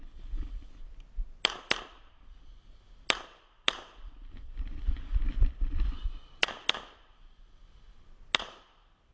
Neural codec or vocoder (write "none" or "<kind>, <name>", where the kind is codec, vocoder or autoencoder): none